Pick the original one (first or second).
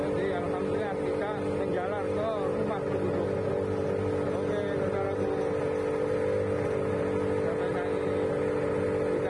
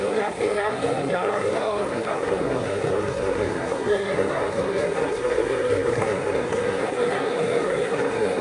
first